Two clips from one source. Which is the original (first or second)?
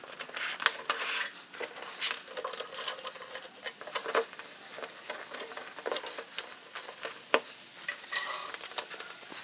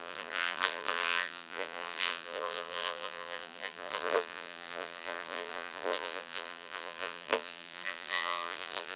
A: first